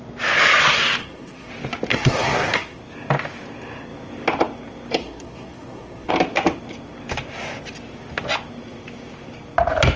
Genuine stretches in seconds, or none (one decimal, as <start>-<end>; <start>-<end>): 0.0-1.0; 1.5-1.9; 2.8-5.0; 6.1-10.0